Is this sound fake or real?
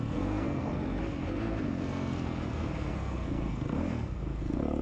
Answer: fake